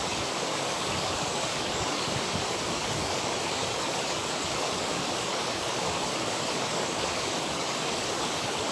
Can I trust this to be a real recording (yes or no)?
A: no